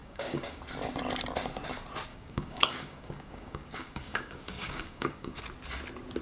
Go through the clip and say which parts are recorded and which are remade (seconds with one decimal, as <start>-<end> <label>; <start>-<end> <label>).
0.0-0.6 remade; 0.6-2.1 recorded; 2.1-5.4 remade; 5.4-6.2 recorded